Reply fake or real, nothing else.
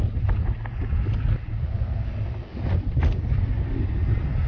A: real